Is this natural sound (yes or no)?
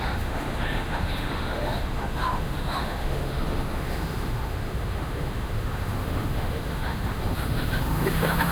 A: no